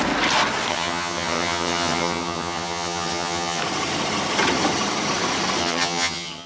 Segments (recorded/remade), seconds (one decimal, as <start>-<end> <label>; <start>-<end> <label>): 0.0-0.7 recorded; 0.7-3.6 remade; 3.6-5.6 recorded; 5.6-6.5 remade